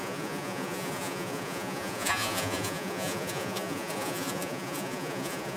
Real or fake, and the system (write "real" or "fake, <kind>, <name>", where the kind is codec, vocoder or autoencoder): fake, vocoder, Vocos